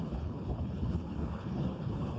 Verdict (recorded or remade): remade